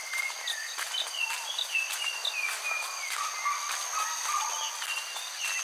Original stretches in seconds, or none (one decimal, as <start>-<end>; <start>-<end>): 0.0-1.1; 2.2-5.6